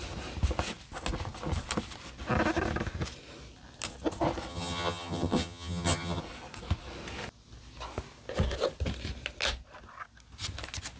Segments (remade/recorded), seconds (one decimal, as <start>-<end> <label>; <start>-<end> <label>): 0.0-4.5 recorded; 4.5-6.2 remade; 6.2-11.0 recorded